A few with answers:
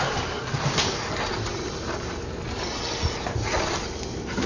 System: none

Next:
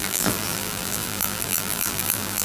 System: vocoder, BigVGAN v2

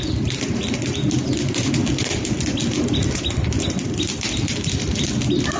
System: vocoder, BigVGAN v2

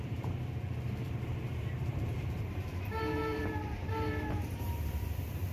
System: vocoder, BigVGAN v2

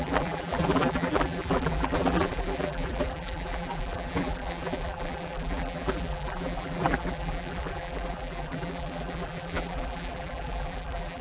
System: vocoder, BigVGAN v2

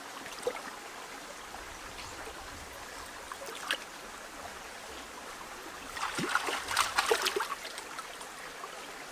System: none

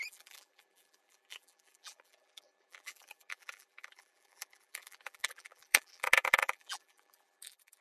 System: vocoder, BigVGAN v2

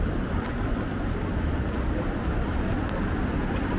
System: none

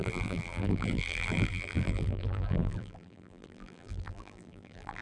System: vocoder, BigVGAN v2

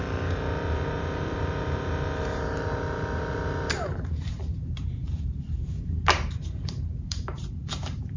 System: vocoder, BigVGAN v2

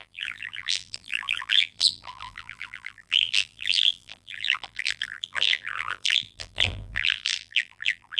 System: vocoder, BigVGAN v2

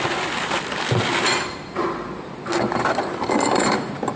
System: none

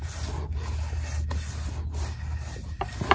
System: none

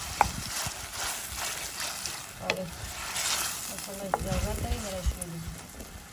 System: none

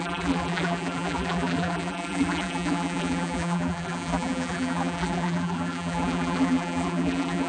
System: vocoder, BigVGAN v2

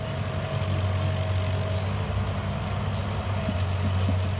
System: none